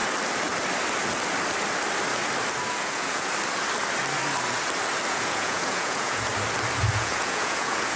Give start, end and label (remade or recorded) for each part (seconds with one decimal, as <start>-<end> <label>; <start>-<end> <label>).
0.0-2.7 recorded; 2.7-3.3 remade; 3.3-5.1 recorded; 5.1-6.3 remade; 6.3-6.9 recorded; 6.9-8.0 remade